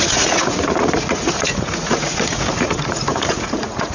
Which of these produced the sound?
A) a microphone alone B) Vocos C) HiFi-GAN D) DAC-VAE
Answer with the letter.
B